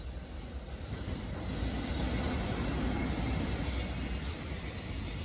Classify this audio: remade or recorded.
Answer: recorded